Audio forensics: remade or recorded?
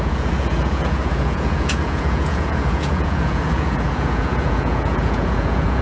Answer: remade